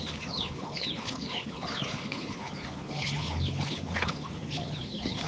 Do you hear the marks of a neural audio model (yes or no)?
yes